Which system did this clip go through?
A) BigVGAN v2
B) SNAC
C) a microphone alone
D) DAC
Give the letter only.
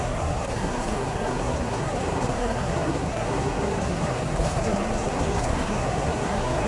B